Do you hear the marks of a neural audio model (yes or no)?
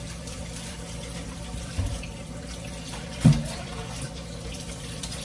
yes